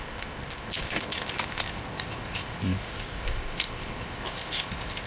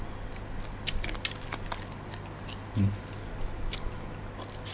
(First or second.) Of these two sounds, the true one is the second